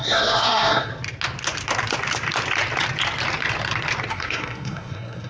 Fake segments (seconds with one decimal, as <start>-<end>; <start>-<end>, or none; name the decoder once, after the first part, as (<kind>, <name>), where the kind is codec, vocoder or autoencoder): 0.0-0.9 (codec, SNAC); 4.1-5.3